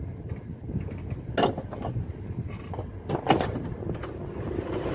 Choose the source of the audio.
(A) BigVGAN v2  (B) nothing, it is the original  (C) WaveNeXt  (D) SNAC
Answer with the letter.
B